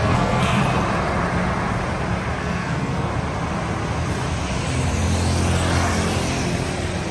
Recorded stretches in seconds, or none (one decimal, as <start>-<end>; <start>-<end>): 0.6-2.4; 3.1-7.1

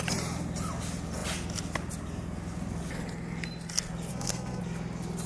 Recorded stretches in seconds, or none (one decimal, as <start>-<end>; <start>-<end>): 0.0-4.1; 4.6-5.3

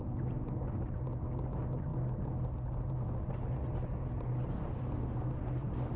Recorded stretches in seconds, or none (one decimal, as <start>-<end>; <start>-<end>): 0.0-6.0

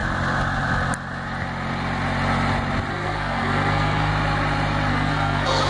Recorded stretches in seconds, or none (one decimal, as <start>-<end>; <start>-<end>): 0.0-2.9; 4.1-4.9